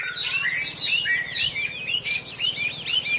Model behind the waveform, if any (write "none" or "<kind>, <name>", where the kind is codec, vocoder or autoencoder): none